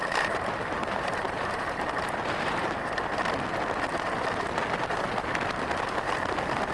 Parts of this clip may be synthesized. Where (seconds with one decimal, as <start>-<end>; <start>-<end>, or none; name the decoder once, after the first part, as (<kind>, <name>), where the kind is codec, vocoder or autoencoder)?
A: 0.0-3.1 (vocoder, BigVGAN v2)